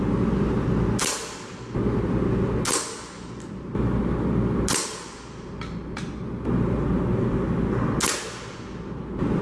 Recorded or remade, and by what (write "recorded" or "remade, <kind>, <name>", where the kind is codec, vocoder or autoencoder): recorded